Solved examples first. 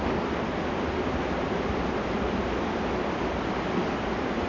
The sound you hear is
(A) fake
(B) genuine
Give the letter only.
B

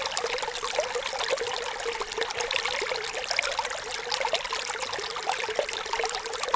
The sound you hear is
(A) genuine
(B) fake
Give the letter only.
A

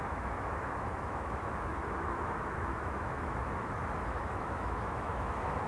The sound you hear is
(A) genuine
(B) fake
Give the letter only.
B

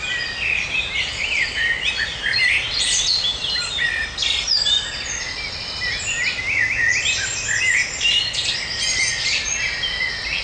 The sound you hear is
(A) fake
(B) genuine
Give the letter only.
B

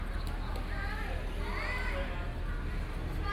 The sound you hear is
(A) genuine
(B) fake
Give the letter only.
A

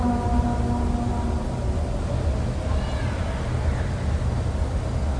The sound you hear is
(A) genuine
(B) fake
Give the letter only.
A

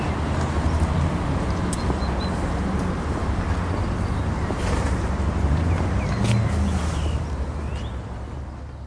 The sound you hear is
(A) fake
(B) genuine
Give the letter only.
B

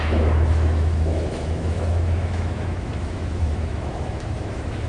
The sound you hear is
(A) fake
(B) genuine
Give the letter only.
A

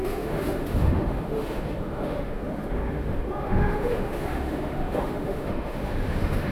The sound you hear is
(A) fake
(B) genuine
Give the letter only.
A